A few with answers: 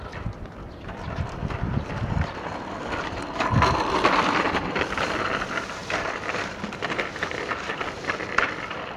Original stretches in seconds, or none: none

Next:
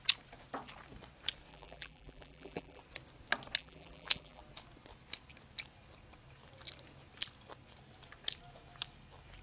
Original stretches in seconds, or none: 0.0-1.5; 2.8-3.6; 4.4-9.4

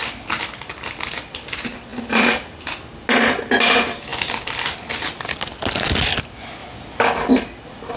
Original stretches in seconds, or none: 0.0-1.9; 2.6-8.0

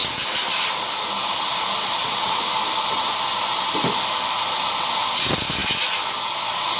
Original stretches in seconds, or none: 0.0-6.8

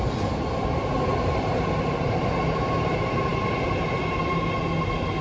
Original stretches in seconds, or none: 0.0-1.1; 2.2-5.2

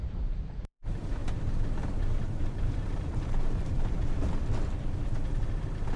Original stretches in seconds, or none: 0.6-1.2; 4.3-6.0